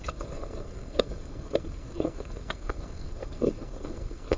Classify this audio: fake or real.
fake